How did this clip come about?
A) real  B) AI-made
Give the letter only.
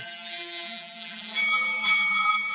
B